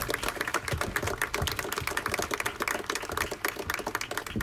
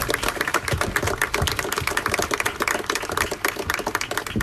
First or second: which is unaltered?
first